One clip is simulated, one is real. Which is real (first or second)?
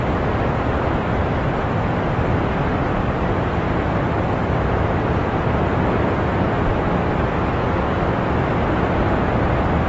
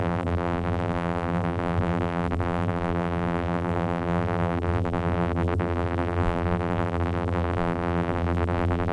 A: first